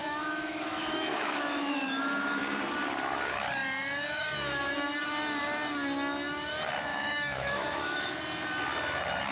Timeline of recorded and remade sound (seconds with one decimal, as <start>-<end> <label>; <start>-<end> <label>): 0.0-2.4 remade; 2.4-6.9 recorded; 6.9-8.2 remade; 8.2-9.3 recorded